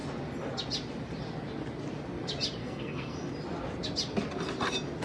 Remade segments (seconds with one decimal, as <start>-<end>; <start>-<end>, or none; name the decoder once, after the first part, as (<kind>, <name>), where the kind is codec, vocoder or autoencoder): 2.6-3.3 (codec, SNAC)